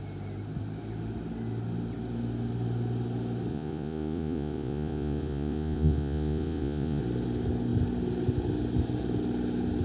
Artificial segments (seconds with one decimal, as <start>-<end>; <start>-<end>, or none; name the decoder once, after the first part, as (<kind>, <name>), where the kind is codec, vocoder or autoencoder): 3.5-7.0 (vocoder, Vocos)